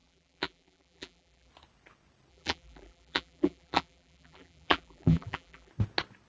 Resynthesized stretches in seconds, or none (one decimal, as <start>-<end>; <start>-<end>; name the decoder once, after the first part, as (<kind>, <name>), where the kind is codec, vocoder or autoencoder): 0.0-1.5 (vocoder, BigVGAN v2); 2.3-5.7

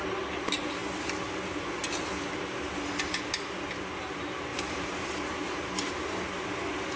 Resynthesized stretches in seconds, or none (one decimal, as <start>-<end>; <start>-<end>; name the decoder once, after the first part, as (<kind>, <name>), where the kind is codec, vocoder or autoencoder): 4.5-5.9 (vocoder, BigVGAN v2)

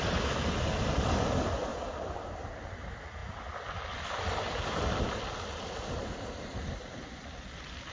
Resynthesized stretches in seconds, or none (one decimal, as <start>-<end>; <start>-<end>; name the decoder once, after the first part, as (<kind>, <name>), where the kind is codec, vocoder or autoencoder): 1.7-2.7 (vocoder, BigVGAN v2)

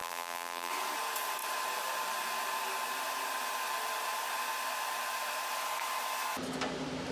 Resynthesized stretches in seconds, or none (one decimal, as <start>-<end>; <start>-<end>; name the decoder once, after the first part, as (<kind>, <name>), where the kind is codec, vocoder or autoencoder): 0.0-0.7 (vocoder, BigVGAN v2)